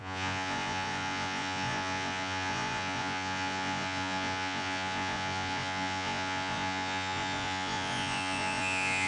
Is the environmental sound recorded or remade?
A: remade